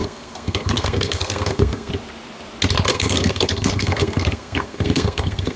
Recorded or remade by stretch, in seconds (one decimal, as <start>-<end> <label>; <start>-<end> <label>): 0.0-1.9 remade; 1.9-2.9 recorded; 2.9-5.6 remade